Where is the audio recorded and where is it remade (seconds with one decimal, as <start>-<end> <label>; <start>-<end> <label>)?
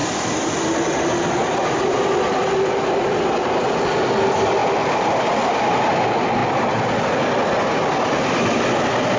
0.0-0.8 remade; 0.8-4.6 recorded; 4.6-5.2 remade; 5.2-9.2 recorded